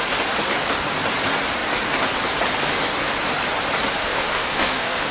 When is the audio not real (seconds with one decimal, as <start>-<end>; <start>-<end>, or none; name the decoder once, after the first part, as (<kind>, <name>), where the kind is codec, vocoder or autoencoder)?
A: 4.0-5.1 (autoencoder, DAC-VAE)